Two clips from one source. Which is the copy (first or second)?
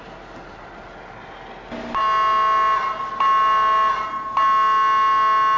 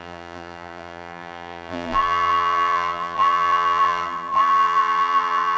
second